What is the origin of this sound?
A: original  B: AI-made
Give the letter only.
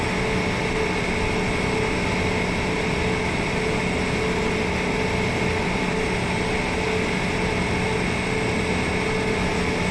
A